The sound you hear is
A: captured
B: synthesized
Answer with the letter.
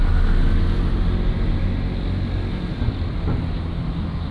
A